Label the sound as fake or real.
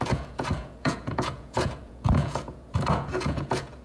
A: fake